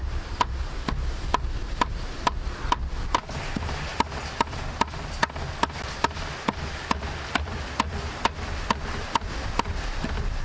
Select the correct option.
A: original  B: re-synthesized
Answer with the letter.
A